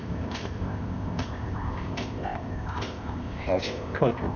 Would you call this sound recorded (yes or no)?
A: no